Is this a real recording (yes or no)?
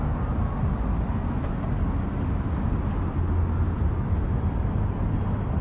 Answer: yes